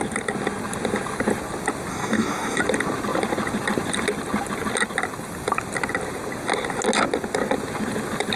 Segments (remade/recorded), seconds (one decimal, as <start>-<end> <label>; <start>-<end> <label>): 0.0-1.9 recorded; 1.9-2.6 remade; 2.6-8.4 recorded